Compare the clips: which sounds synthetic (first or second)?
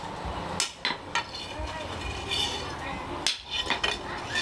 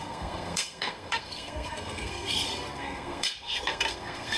second